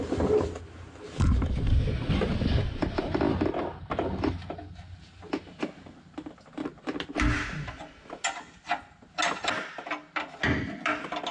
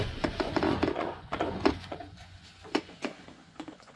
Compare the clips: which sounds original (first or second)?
first